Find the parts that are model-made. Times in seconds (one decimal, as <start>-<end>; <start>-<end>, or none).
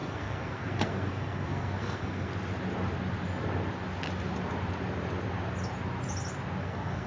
0.0-2.3; 6.6-7.1